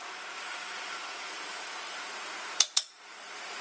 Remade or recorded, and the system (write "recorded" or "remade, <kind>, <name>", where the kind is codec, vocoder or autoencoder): remade, vocoder, Vocos